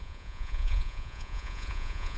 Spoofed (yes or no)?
yes